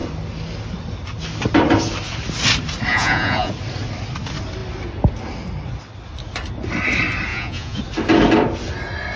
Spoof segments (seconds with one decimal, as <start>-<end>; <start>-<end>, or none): 2.9-3.5; 7.3-7.8